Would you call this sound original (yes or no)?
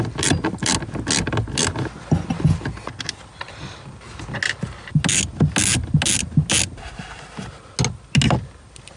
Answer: yes